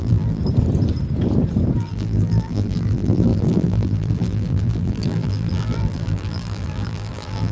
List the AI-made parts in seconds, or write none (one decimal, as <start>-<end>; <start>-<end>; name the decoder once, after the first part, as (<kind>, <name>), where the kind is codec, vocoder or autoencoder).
0.0-0.4 (vocoder, BigVGAN v2); 1.8-7.5